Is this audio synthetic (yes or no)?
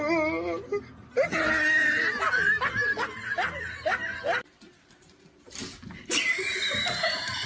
no